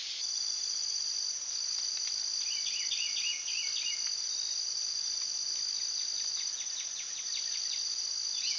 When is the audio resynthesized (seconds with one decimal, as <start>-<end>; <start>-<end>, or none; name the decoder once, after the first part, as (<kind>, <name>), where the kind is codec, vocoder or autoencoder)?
none